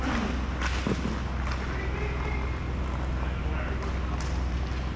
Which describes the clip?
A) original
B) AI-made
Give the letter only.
A